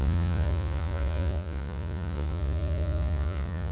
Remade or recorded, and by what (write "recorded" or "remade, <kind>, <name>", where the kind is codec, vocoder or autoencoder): remade, vocoder, Vocos